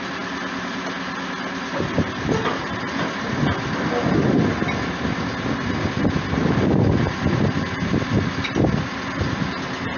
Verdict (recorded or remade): recorded